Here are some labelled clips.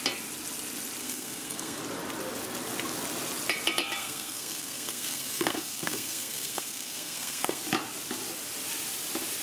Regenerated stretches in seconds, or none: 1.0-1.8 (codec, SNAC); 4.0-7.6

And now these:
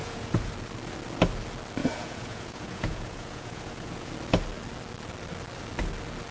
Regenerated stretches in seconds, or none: 0.0-0.5 (vocoder, Vocos); 1.8-4.1

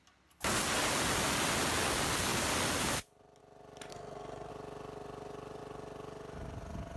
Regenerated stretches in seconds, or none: 3.9-4.5 (codec, SNAC)